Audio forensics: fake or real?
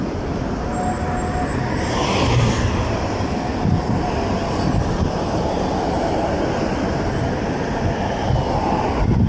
real